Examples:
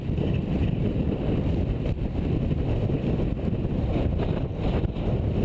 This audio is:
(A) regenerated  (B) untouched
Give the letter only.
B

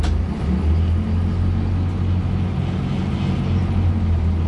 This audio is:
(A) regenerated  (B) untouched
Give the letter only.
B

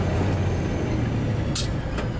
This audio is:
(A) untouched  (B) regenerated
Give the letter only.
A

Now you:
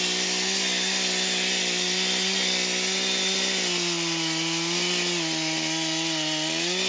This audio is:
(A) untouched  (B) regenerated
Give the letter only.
A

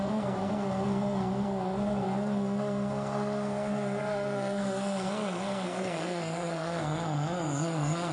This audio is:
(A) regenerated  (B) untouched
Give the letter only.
A